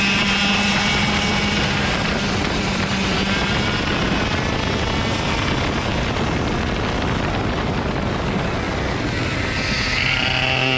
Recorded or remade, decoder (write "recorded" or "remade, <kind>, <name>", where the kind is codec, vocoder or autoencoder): recorded